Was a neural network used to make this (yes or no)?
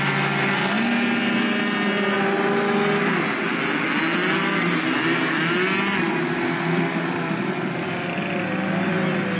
no